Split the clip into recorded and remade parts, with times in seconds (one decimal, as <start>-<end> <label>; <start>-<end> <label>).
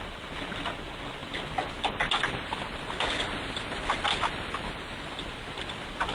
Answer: 0.0-6.1 recorded